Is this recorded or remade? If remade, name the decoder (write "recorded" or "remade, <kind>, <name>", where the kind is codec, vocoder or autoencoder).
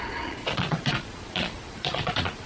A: remade, vocoder, Vocos